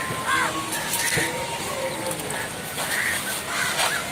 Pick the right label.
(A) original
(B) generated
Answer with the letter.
A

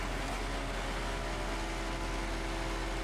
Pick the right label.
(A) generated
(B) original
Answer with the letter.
B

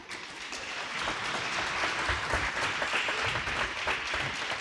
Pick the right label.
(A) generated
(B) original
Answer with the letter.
B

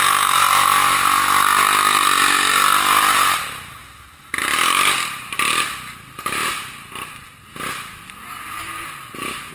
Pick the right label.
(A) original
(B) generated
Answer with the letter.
A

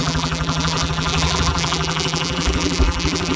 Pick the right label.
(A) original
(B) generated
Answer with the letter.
B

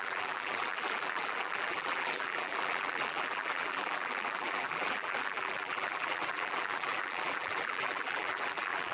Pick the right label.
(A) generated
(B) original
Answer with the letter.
A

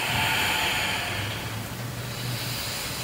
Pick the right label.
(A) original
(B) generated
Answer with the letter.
A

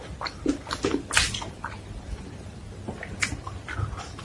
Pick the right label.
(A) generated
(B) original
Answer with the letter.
B